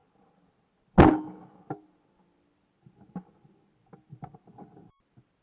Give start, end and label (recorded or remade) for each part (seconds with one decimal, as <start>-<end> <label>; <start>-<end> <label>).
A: 0.0-5.4 recorded